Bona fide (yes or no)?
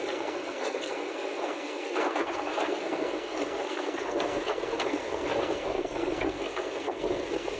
no